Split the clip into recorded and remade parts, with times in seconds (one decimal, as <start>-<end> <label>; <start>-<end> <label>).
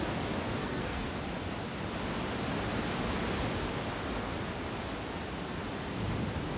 0.0-0.6 recorded; 0.6-1.1 remade; 1.1-6.6 recorded